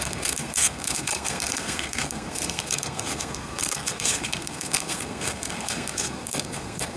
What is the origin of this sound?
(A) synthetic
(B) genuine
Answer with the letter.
A